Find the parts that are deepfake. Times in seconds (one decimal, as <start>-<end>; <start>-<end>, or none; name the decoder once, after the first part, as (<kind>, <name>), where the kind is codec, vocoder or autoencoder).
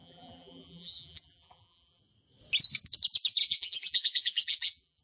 0.0-2.0 (vocoder, BigVGAN v2); 3.4-5.0